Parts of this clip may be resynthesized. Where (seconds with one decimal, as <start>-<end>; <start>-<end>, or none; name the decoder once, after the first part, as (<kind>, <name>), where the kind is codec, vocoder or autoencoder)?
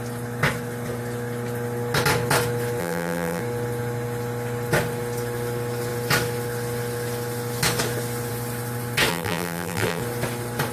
2.8-3.4 (vocoder, BigVGAN v2); 9.1-10.0